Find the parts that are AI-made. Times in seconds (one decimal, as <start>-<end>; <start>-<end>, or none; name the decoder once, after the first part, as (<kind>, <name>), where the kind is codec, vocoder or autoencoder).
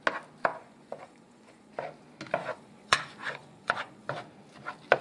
0.5-1.7 (vocoder, Vocos); 2.4-4.1